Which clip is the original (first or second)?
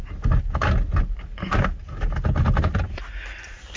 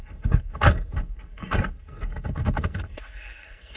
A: first